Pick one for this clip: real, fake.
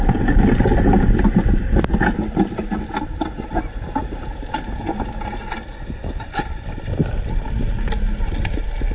real